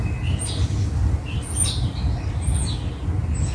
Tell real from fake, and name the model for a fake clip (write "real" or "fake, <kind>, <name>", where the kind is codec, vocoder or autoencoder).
real